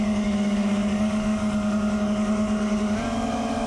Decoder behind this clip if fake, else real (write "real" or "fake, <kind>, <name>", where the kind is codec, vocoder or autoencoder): fake, codec, DAC